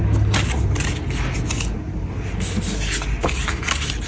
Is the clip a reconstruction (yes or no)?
no